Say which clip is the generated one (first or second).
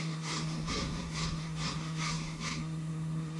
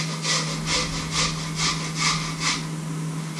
first